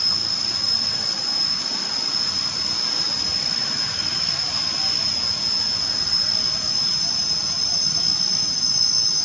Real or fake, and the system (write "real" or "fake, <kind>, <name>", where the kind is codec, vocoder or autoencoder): real